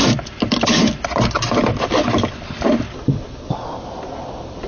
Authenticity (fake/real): real